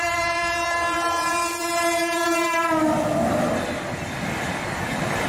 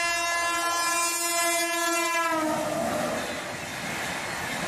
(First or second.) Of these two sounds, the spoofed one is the first